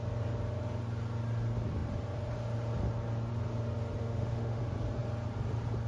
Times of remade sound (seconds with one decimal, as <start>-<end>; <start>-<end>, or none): 4.0-4.6